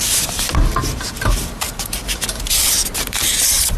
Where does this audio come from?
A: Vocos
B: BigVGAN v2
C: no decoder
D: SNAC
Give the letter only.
B